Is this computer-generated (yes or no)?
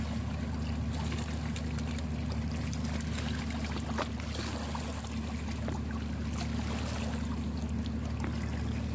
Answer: no